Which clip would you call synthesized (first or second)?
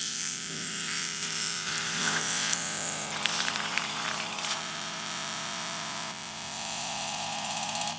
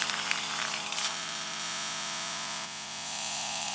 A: first